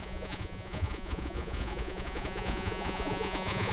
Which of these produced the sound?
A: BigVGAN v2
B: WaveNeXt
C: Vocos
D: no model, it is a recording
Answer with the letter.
C